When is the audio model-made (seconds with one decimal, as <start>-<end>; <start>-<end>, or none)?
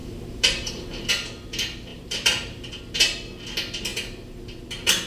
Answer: 0.0-1.1; 1.9-2.6